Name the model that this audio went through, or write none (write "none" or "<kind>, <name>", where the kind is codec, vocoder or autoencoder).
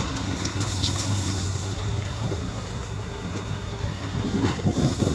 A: codec, SNAC